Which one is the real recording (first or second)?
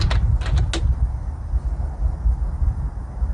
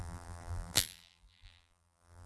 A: first